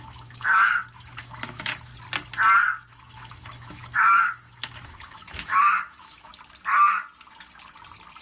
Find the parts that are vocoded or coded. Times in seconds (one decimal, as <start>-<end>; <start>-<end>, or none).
0.0-1.9; 2.9-6.3

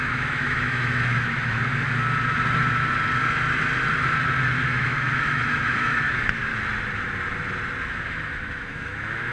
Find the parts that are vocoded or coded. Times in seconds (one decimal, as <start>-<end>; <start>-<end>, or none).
0.0-1.7; 4.6-6.5; 7.8-9.3

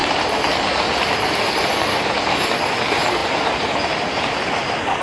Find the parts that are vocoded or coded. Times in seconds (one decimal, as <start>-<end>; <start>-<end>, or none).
none

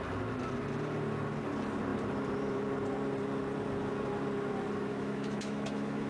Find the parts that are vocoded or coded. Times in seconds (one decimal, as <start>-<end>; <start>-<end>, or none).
4.9-6.1